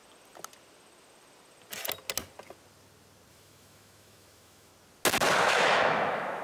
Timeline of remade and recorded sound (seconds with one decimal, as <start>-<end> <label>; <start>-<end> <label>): 0.0-3.3 recorded; 3.3-4.7 remade; 4.7-5.4 recorded; 5.4-6.4 remade